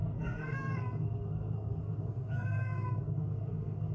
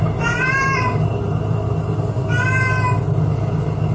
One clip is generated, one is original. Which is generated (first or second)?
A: first